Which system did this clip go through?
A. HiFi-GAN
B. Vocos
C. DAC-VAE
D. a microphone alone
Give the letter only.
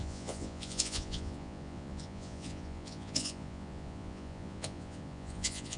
B